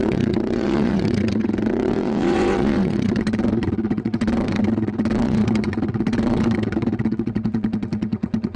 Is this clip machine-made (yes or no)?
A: yes